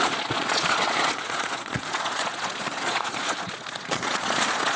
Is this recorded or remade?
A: remade